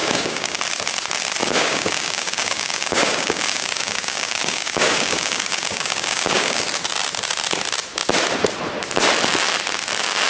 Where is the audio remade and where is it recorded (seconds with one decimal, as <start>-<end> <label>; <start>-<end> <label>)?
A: 0.0-0.6 remade; 0.6-1.4 recorded; 1.4-6.6 remade; 6.6-10.3 recorded